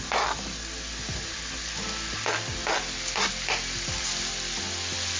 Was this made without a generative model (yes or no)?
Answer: yes